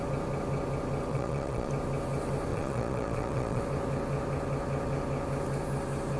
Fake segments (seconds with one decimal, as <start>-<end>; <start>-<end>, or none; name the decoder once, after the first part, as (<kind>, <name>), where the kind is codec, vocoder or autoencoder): 1.1-1.7 (vocoder, Vocos); 2.5-3.6